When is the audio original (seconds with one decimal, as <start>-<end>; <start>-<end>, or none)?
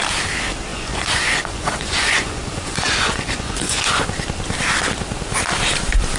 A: 0.0-0.7; 4.0-6.2